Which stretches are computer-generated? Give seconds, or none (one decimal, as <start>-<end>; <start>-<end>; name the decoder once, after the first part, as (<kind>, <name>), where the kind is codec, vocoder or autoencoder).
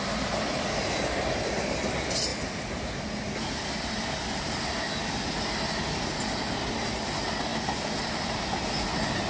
none